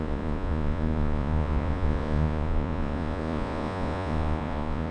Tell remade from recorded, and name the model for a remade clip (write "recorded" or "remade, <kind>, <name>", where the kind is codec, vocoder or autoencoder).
remade, vocoder, Vocos